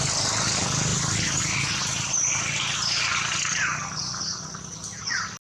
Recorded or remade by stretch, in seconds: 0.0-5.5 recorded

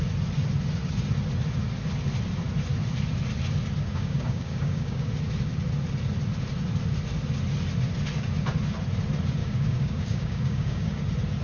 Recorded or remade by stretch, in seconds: 0.0-3.9 recorded; 3.9-5.1 remade; 5.1-9.4 recorded; 9.4-11.0 remade; 11.0-11.4 recorded

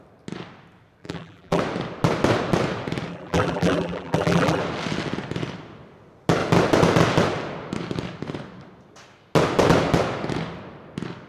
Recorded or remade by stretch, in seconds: 0.0-1.0 recorded; 1.0-1.6 remade; 1.6-3.1 recorded; 3.1-4.6 remade; 4.6-11.3 recorded

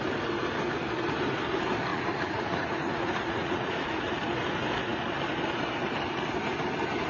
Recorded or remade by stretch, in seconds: 0.0-1.9 recorded; 1.9-4.1 remade; 4.1-7.1 recorded

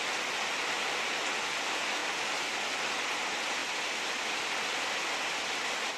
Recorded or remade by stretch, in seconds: 0.0-6.0 recorded

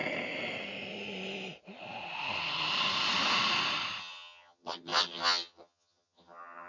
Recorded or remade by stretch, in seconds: 0.0-4.0 recorded; 4.0-6.7 remade

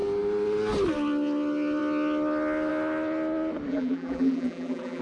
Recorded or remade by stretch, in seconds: 0.0-3.7 recorded; 3.7-5.0 remade

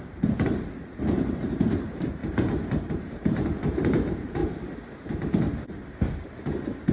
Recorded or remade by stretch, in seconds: 0.0-2.2 remade; 2.2-2.8 recorded; 2.8-4.4 remade; 4.4-6.2 recorded; 6.2-6.9 remade